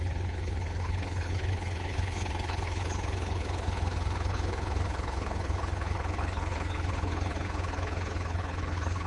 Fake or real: fake